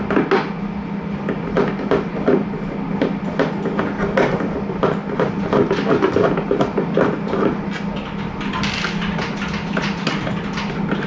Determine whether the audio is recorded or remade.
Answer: recorded